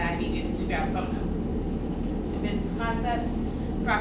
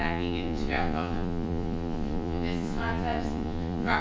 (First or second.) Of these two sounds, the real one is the first